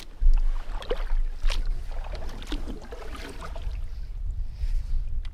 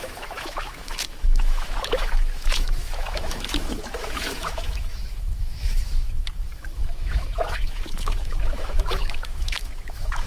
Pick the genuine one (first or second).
first